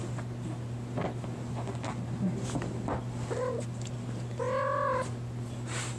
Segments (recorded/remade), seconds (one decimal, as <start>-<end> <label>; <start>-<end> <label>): 0.0-6.0 recorded